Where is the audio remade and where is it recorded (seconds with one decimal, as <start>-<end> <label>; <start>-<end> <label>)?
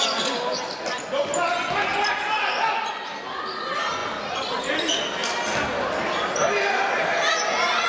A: 0.0-7.9 recorded